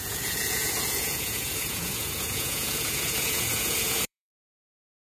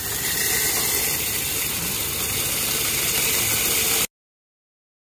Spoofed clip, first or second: first